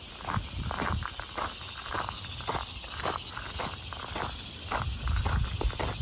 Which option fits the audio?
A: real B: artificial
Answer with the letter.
A